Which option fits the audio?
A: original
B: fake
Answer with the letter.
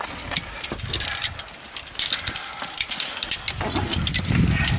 A